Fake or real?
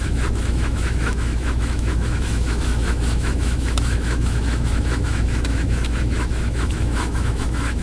fake